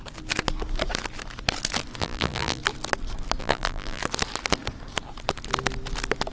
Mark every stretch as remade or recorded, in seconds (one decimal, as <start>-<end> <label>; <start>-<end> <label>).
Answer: 0.0-2.0 recorded; 2.0-2.6 remade; 2.6-3.4 recorded; 3.4-4.0 remade; 4.0-6.3 recorded